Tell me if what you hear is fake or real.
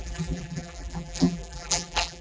fake